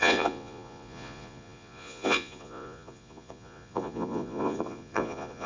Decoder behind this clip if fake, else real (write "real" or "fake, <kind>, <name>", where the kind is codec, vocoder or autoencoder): fake, vocoder, Vocos